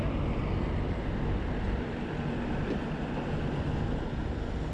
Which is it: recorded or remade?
recorded